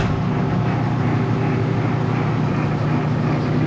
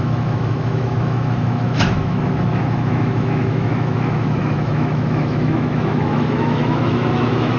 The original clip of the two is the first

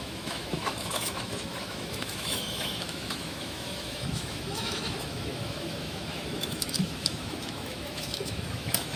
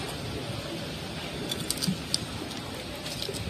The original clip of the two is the second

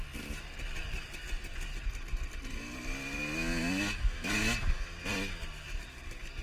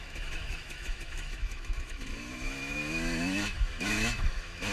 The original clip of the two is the first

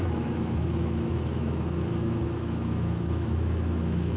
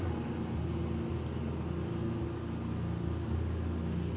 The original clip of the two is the second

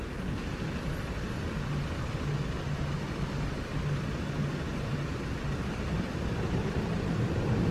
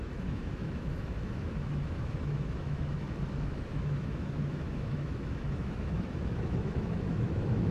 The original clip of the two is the first